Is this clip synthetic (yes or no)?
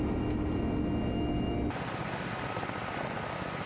no